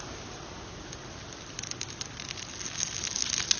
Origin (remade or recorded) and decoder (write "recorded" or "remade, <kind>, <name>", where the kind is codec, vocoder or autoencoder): recorded